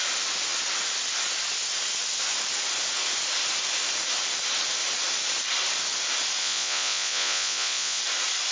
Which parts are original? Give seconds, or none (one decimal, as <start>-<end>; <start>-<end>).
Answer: 0.0-6.4; 8.0-8.5